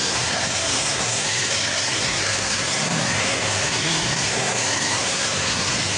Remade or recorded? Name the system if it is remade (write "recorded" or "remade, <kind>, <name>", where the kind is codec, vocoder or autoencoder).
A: remade, codec, SNAC